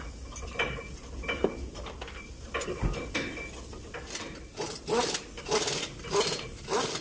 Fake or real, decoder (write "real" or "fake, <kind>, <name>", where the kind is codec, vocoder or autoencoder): real